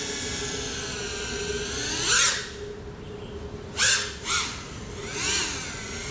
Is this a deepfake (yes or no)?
no